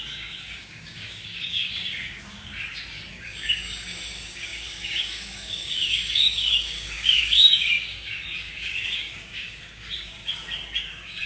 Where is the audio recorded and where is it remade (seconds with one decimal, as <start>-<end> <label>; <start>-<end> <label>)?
0.0-2.5 remade; 2.5-3.1 recorded; 3.1-10.2 remade; 10.2-10.8 recorded; 10.8-11.3 remade